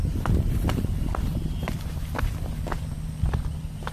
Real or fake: real